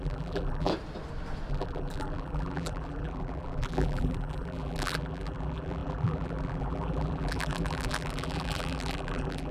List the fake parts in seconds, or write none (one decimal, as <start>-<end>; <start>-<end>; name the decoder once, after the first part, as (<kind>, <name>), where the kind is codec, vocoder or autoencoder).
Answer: 0.0-0.7 (vocoder, BigVGAN v2); 1.5-9.5